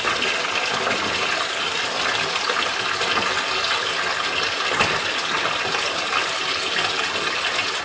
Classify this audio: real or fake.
real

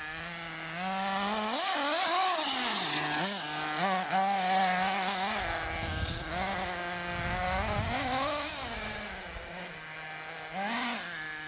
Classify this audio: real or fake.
real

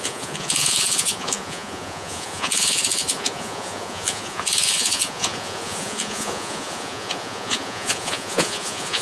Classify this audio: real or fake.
fake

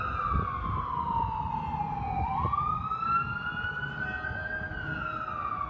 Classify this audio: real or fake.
real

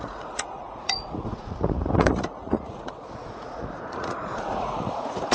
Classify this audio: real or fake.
fake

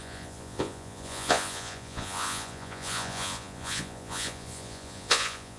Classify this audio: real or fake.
fake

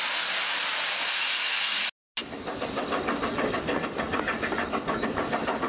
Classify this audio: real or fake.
real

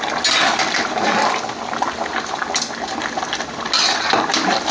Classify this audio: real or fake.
real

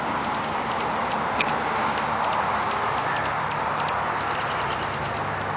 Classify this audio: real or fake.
real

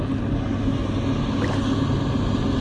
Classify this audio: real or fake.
real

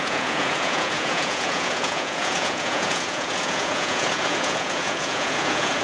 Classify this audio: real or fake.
fake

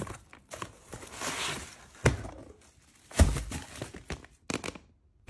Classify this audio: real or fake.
real